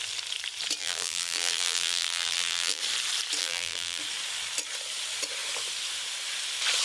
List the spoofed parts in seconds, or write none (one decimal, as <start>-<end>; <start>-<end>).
0.8-2.8; 3.4-4.0